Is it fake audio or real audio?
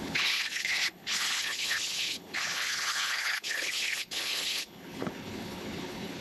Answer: fake